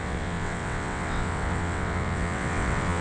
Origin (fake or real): fake